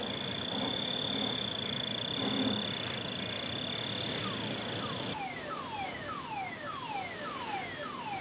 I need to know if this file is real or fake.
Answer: real